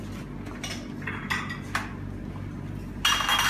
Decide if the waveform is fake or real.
real